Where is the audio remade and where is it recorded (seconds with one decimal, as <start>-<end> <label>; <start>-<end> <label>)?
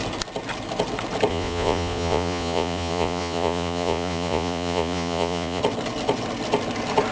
0.0-1.3 recorded; 1.3-5.6 remade; 5.6-7.1 recorded